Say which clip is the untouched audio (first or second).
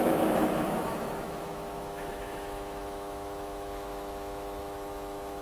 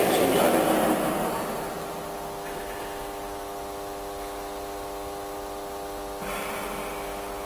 second